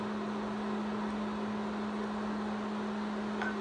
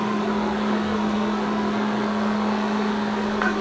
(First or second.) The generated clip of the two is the second